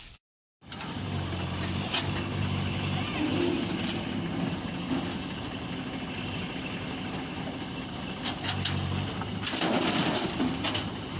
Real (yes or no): yes